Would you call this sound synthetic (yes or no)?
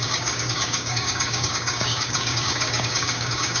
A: yes